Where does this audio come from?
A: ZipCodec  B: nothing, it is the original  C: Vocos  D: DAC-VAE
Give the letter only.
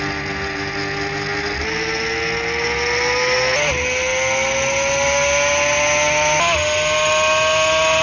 B